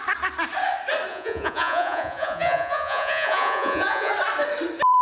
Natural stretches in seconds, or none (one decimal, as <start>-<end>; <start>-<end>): 0.0-1.1; 4.1-5.0